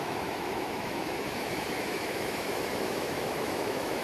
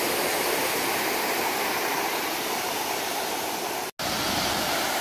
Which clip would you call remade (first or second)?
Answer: first